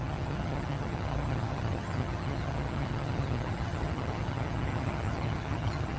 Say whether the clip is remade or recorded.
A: remade